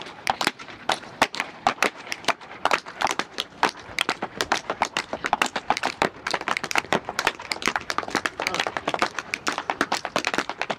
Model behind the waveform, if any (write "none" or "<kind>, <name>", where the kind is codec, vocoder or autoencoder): vocoder, BigVGAN v2